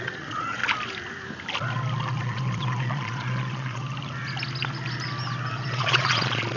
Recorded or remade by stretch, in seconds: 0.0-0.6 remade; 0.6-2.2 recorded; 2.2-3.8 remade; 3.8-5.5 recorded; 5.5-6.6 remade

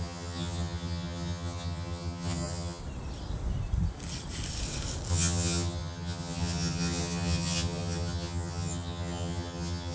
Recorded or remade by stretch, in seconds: 0.0-2.8 remade; 2.8-5.1 recorded; 5.1-9.9 remade

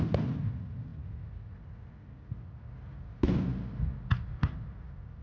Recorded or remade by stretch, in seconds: 0.0-5.2 recorded

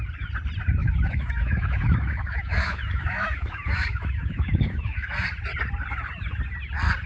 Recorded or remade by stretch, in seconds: 0.0-0.8 recorded; 0.8-5.1 remade; 5.1-7.1 recorded

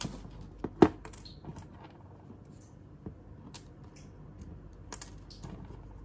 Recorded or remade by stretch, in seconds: 0.0-6.0 recorded

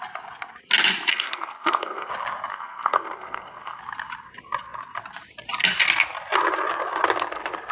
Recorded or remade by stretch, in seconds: 0.0-1.1 recorded; 1.1-2.1 remade; 2.1-2.5 recorded; 2.5-3.8 remade; 3.8-7.7 recorded

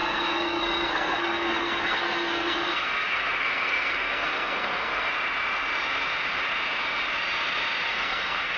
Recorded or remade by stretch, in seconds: 0.0-5.1 remade; 5.1-7.9 recorded; 7.9-8.6 remade